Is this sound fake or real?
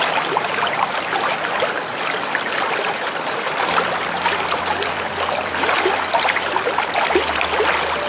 real